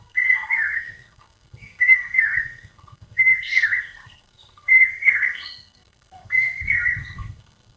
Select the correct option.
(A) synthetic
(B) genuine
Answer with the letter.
A